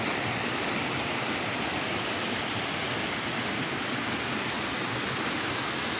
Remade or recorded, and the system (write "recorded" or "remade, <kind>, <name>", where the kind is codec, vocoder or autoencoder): recorded